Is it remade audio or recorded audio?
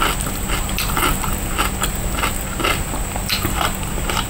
recorded